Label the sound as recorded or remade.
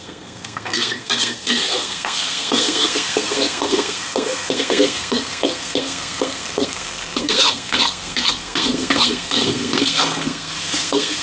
remade